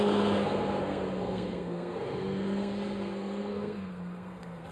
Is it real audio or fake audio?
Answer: fake